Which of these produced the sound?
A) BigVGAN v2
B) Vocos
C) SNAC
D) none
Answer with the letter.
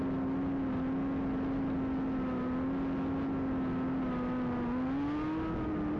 D